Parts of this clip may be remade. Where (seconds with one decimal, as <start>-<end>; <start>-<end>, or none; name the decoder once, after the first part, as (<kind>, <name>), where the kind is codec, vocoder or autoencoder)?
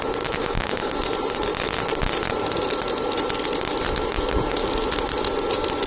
0.4-0.9 (codec, DAC)